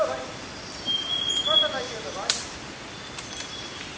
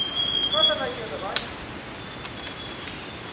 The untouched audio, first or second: second